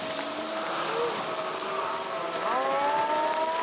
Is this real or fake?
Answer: real